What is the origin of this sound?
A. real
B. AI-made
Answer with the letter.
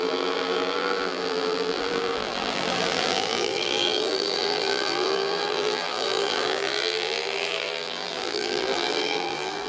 B